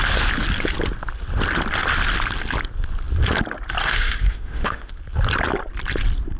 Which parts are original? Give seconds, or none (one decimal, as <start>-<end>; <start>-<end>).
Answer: 0.0-3.8; 4.9-6.4